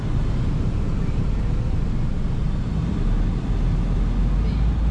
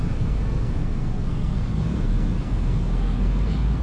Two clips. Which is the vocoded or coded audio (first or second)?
second